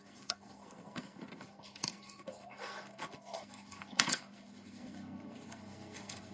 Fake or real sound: fake